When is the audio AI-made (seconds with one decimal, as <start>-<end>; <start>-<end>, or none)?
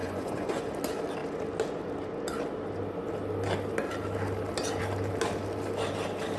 0.0-0.7